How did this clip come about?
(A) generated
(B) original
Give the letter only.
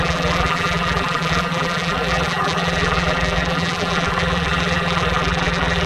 A